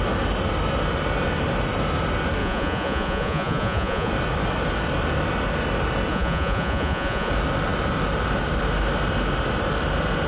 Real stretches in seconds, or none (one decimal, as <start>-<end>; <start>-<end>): 0.0-2.4; 4.1-6.1; 7.3-10.3